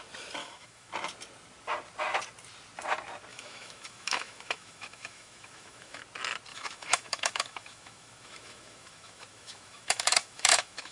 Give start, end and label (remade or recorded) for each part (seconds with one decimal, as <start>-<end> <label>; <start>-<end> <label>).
0.0-0.4 recorded; 0.4-0.9 remade; 0.9-3.3 recorded; 3.3-6.0 remade; 6.0-6.5 recorded; 6.5-10.9 remade